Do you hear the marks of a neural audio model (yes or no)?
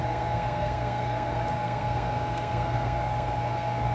yes